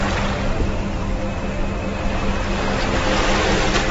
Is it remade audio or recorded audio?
recorded